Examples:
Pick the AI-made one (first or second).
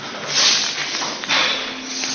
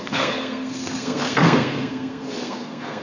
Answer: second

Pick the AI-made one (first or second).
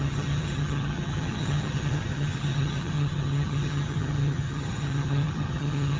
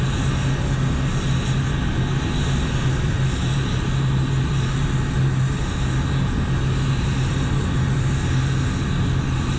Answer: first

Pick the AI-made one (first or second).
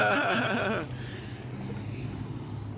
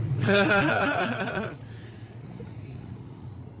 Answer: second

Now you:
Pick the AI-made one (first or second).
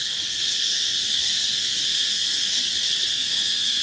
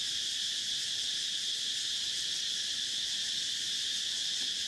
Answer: first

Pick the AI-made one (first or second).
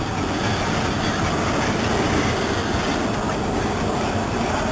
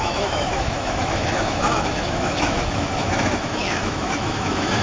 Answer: second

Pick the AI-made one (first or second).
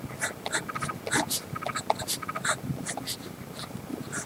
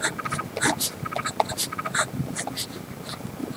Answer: first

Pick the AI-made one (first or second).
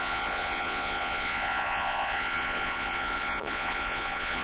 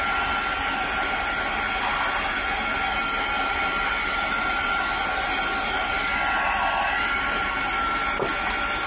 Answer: first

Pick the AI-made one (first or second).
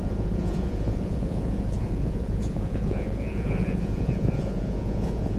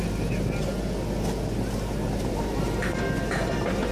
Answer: first